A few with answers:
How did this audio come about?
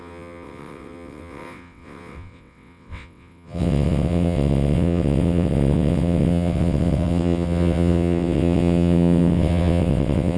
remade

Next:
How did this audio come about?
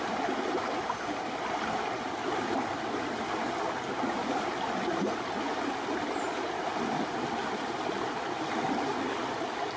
recorded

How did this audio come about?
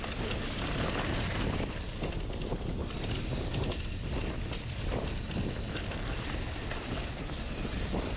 recorded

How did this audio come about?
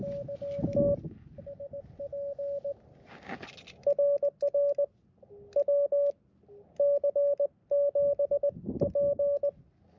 recorded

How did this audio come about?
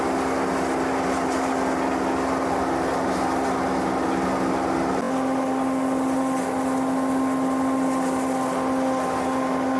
recorded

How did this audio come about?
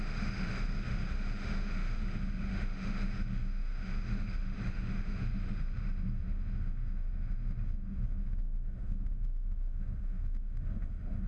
remade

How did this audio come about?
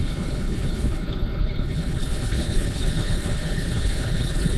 remade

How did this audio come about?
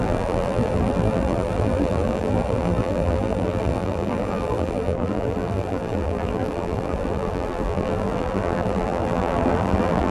remade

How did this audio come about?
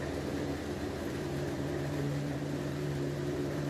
remade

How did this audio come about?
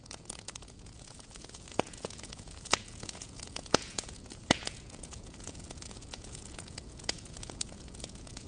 remade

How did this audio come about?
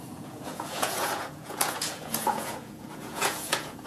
remade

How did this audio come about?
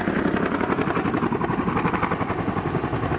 recorded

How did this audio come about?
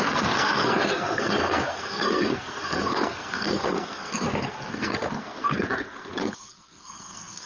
remade